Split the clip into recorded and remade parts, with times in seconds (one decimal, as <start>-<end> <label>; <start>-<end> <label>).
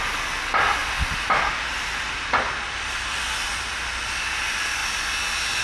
0.0-5.6 recorded